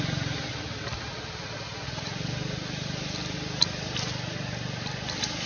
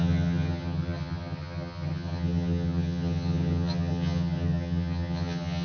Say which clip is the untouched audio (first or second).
first